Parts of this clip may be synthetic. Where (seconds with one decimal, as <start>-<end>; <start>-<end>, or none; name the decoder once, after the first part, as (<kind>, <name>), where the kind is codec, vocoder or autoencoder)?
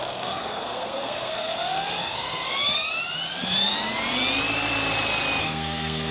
0.0-1.5 (codec, SNAC); 2.0-2.4; 5.4-6.1